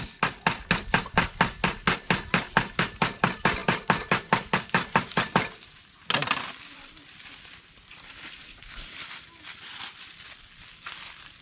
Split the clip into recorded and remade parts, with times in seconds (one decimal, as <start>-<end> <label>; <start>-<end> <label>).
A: 0.0-11.4 recorded